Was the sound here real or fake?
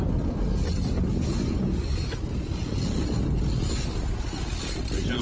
real